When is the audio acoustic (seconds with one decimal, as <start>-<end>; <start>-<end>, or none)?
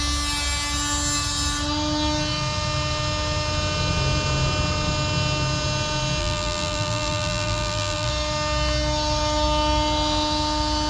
0.0-6.2; 8.1-10.9